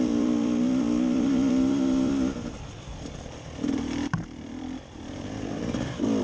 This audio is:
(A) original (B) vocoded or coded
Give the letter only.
B